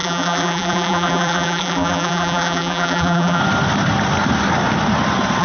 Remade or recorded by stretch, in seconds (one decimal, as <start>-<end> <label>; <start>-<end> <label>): 0.0-3.4 remade; 3.4-5.4 recorded